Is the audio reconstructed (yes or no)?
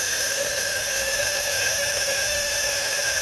yes